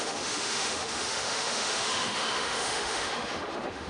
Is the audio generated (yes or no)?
yes